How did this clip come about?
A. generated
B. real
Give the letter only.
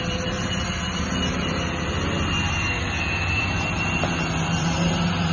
A